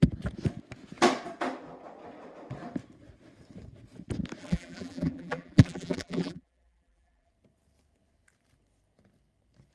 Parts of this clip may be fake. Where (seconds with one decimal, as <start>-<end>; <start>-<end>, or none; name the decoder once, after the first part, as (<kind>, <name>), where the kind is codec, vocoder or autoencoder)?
4.4-7.3 (vocoder, BigVGAN v2)